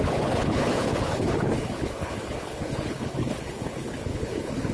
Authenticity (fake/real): fake